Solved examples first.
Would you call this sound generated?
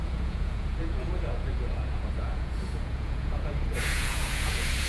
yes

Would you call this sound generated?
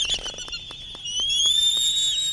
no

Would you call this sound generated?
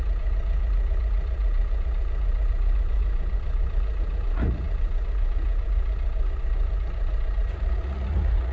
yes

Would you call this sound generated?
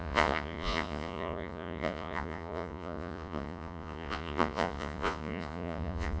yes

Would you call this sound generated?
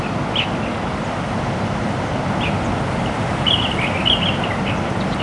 no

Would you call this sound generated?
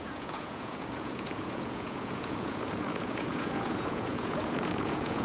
yes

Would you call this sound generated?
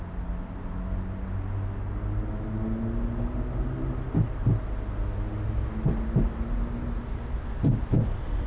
no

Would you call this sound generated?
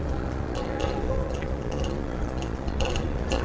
yes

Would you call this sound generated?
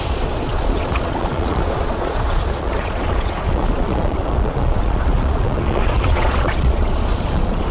yes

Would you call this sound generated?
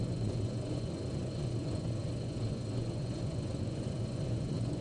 yes